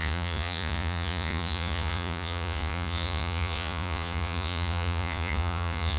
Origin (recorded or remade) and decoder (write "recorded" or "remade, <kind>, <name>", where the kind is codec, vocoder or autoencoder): remade, vocoder, Vocos